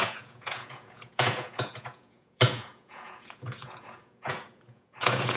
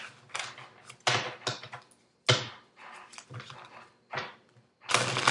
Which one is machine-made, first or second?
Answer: first